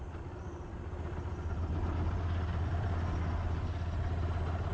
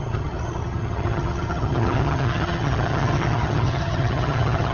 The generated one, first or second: second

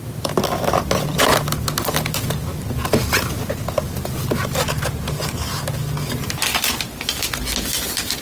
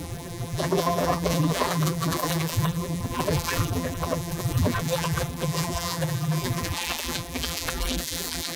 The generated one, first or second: second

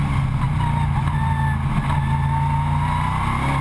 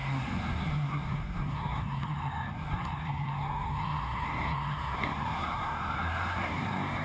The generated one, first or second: second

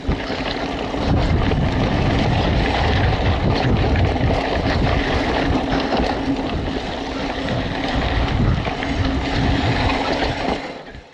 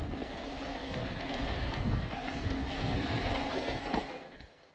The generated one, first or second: second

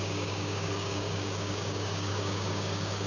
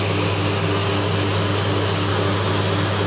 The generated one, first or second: first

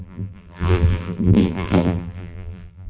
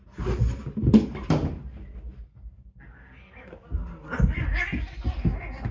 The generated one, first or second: first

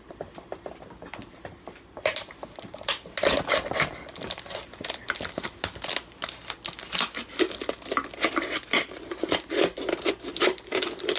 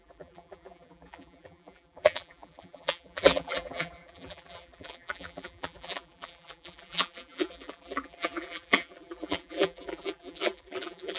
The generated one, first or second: second